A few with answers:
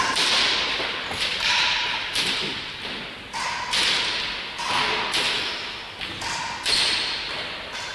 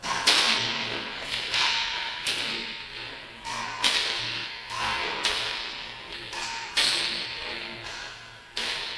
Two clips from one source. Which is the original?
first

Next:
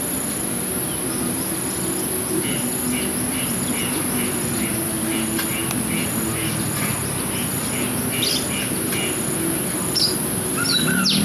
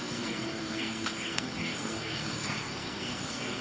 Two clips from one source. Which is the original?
first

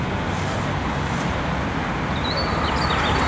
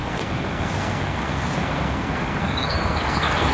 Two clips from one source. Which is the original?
first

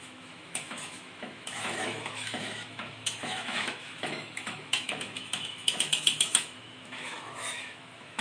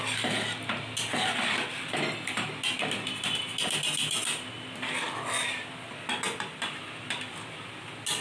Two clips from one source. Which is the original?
second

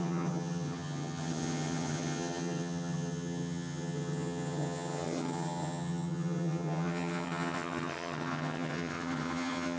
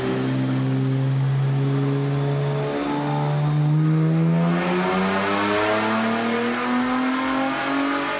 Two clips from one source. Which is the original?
second